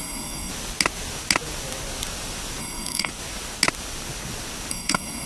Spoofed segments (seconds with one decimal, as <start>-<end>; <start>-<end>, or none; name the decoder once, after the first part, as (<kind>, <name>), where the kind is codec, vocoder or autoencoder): 0.0-0.5 (codec, SNAC); 2.6-3.1; 4.7-5.3